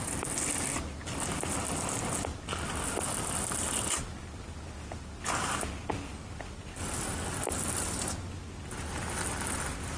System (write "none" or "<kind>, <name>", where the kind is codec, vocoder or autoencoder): none